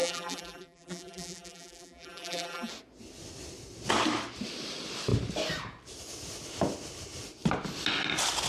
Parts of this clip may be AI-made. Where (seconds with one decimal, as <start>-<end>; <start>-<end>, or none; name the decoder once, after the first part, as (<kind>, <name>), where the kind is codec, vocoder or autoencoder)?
0.0-2.7 (vocoder, BigVGAN v2)